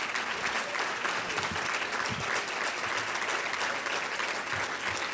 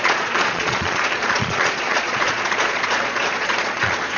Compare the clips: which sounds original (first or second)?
first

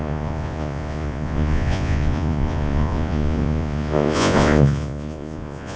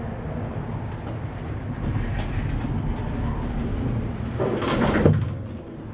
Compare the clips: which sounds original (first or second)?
second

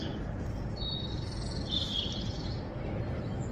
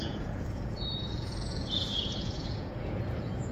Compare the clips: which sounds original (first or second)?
first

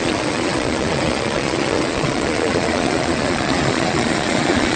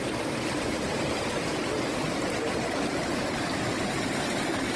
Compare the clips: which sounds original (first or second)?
second